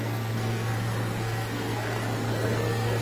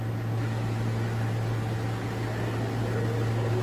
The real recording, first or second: second